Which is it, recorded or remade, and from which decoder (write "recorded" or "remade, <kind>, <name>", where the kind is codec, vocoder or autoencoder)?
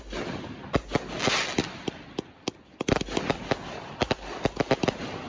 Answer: recorded